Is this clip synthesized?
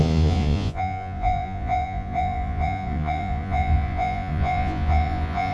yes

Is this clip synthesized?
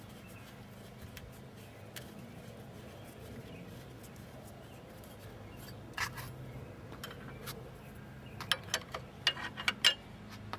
no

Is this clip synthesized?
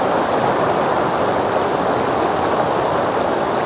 no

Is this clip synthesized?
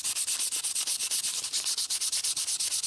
no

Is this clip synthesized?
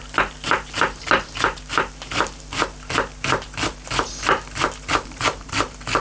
no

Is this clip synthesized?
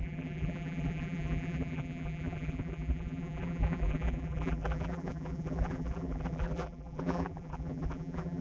yes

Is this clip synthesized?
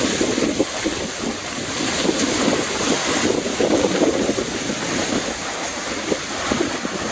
no